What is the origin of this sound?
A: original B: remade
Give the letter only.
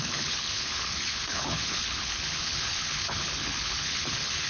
B